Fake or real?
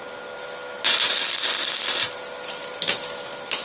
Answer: real